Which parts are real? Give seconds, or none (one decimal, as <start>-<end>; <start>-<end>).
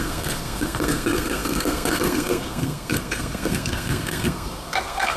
none